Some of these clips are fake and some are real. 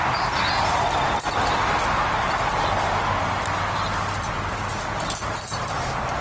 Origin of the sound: real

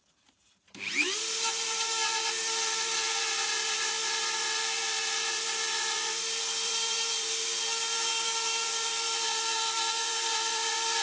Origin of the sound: fake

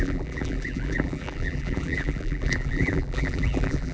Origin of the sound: fake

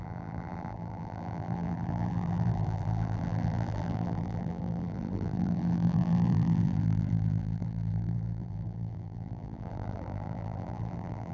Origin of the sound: fake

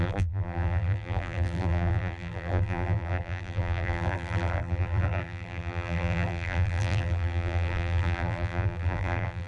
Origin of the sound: fake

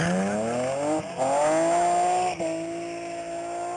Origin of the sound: real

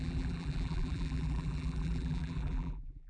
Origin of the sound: fake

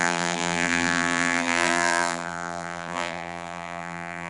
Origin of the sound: fake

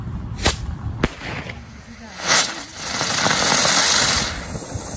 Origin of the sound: real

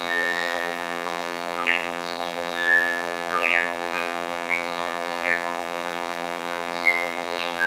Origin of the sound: fake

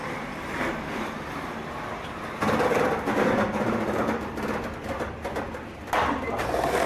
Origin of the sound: fake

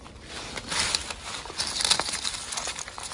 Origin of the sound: real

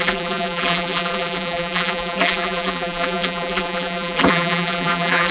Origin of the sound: fake